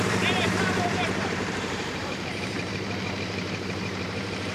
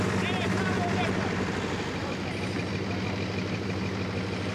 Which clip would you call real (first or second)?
second